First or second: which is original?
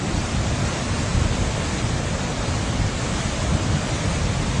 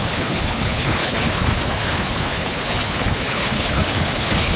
first